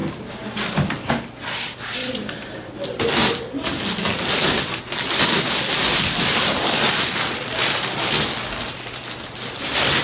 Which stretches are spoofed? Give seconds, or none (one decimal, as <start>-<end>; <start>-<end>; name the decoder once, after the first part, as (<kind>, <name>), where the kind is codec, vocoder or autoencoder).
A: none